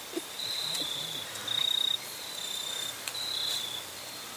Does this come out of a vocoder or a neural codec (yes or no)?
no